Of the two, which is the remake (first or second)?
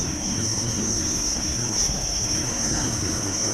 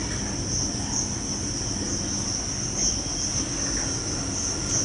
first